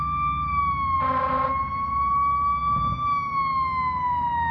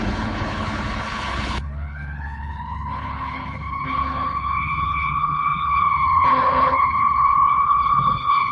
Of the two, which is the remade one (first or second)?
second